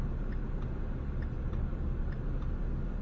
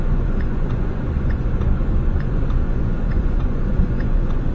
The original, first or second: first